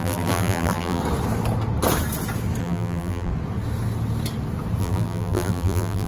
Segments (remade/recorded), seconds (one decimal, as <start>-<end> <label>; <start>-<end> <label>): 0.0-1.0 remade; 1.0-2.6 recorded; 2.6-3.3 remade; 3.3-4.8 recorded; 4.8-6.1 remade